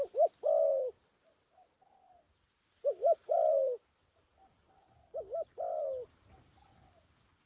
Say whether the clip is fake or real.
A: real